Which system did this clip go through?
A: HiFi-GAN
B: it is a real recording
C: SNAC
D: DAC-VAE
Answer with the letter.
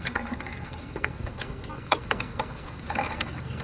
C